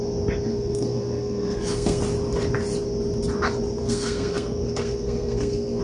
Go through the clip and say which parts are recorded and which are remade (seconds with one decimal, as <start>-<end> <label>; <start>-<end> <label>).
0.0-0.5 recorded; 0.5-2.0 remade; 2.0-3.8 recorded; 3.8-5.8 remade